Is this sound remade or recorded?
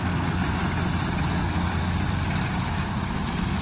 recorded